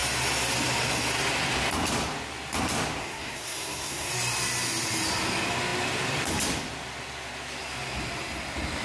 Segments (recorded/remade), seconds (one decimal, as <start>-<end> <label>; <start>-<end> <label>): 0.0-3.0 recorded; 3.0-4.1 remade; 4.1-8.8 recorded